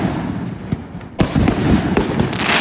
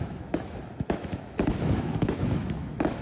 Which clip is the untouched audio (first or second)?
first